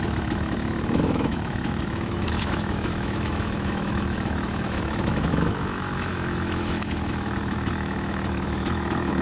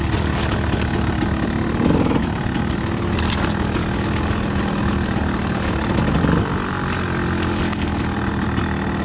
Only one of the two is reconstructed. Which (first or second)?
first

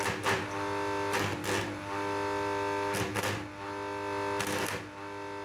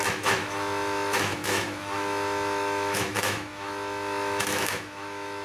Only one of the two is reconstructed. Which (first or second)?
second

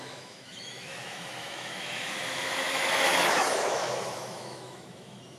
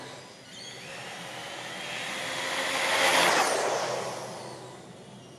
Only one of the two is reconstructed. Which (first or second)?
first